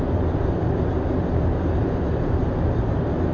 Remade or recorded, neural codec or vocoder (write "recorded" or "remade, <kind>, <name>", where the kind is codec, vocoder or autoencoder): recorded